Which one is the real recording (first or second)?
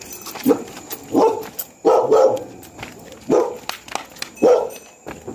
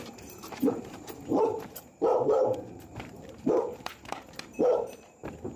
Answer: first